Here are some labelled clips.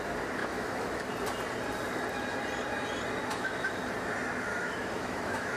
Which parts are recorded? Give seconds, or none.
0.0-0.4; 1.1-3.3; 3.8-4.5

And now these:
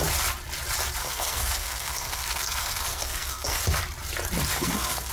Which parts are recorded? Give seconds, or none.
0.0-1.0; 3.6-4.5

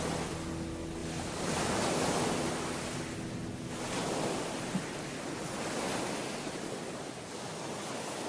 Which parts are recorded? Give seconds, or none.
0.0-1.0; 1.9-8.3

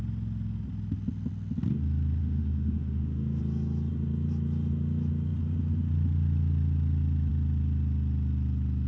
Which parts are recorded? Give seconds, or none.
0.0-2.2; 3.4-8.9

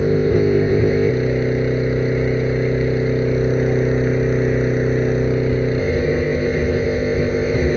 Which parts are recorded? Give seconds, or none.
1.1-5.8

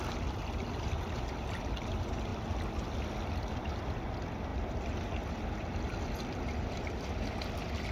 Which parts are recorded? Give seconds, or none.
0.0-7.9